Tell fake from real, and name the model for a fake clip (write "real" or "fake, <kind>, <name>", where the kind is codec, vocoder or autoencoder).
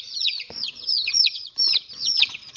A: fake, vocoder, Vocos